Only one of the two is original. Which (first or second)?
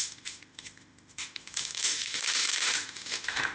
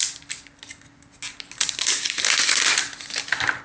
second